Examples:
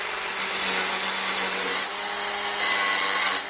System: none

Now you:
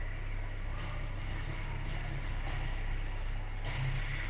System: none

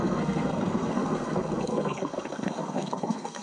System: codec, SNAC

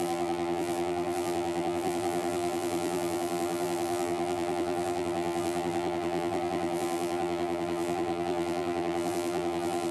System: vocoder, BigVGAN v2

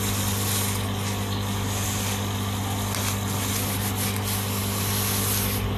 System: none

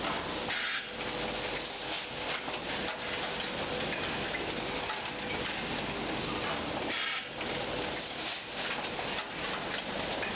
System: none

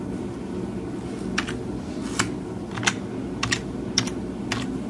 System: none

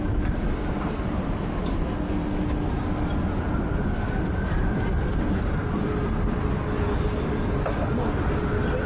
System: none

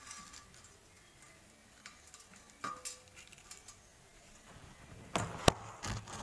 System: none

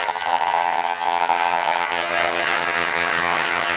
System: vocoder, HiFi-GAN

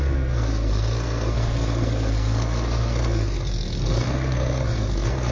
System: codec, SNAC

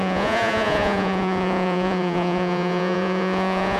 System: vocoder, Vocos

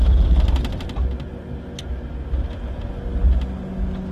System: none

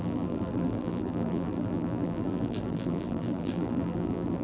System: vocoder, BigVGAN v2